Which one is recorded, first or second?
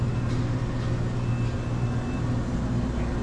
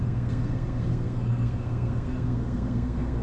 first